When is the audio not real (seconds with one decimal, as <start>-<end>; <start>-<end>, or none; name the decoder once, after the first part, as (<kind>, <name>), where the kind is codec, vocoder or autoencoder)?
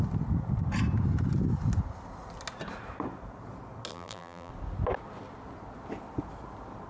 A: 3.9-4.5 (vocoder, BigVGAN v2)